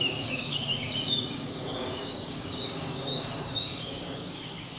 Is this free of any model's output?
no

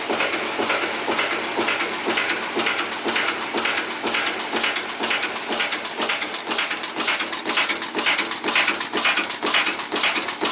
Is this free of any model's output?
yes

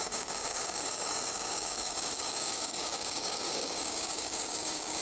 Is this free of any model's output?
no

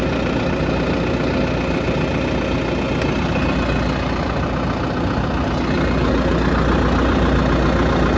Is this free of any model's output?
yes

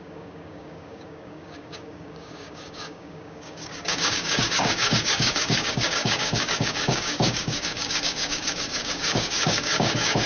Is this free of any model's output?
no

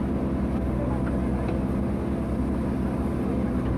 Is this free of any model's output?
yes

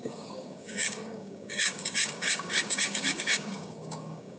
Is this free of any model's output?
no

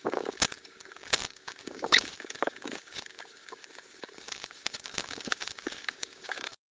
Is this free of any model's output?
no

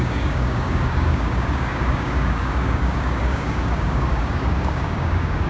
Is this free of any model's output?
no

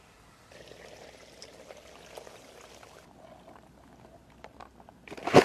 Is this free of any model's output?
yes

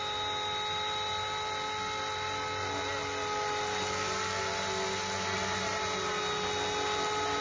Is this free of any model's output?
yes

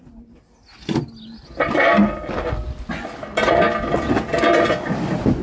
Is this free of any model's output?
yes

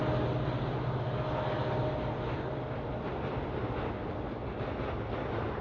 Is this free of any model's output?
yes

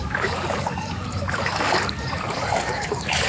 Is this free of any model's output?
no